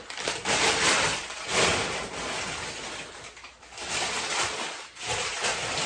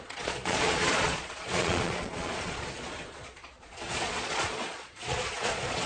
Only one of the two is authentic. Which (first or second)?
first